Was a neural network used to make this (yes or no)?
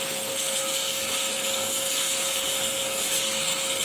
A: yes